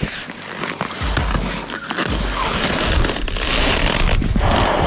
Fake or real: real